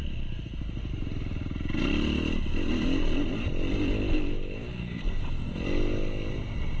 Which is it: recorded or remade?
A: recorded